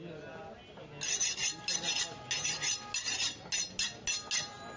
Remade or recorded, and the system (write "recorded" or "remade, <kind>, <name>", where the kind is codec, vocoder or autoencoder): recorded